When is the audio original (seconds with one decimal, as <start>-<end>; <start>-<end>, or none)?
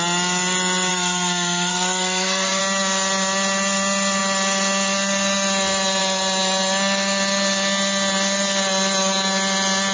0.0-0.9; 2.6-9.9